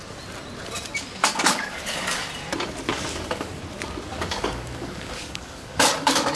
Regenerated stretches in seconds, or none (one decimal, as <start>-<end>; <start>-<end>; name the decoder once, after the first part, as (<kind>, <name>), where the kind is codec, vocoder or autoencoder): 1.2-2.3 (codec, DAC); 2.9-3.6; 4.1-6.4